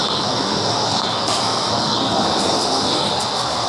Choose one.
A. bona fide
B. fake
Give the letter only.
B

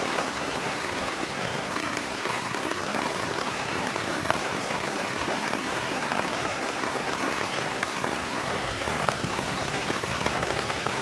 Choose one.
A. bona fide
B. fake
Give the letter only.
B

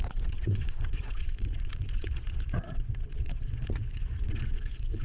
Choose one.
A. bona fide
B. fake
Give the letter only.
B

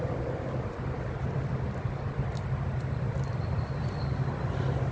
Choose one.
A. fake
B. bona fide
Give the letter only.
B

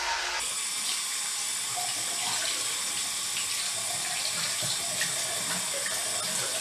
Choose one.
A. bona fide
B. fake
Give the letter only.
A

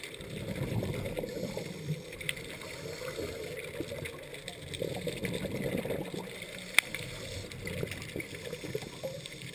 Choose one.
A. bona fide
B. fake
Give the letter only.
A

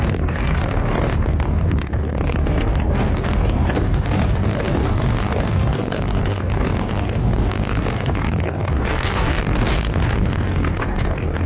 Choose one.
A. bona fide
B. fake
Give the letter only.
B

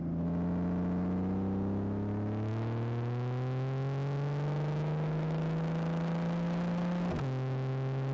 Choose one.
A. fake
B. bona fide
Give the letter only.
B